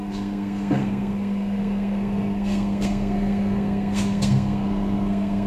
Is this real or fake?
fake